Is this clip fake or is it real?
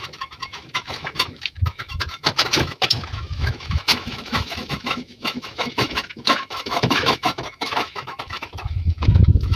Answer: fake